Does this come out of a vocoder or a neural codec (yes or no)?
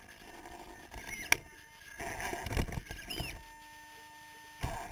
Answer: no